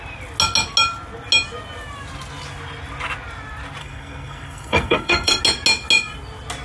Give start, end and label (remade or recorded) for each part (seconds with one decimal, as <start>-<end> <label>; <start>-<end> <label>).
0.0-3.8 recorded; 3.8-5.4 remade; 5.4-6.6 recorded